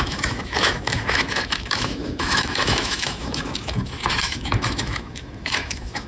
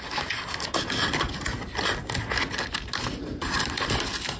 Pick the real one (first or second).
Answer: second